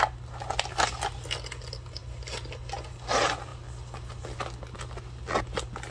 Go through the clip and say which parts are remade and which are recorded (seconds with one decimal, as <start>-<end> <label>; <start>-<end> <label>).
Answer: 0.0-5.9 recorded